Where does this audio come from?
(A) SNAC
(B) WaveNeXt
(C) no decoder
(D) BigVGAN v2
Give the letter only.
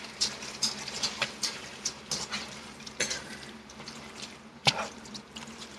D